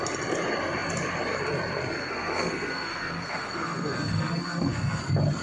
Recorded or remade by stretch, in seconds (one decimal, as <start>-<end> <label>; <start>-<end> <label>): 0.0-2.0 recorded; 2.0-5.0 remade; 5.0-5.4 recorded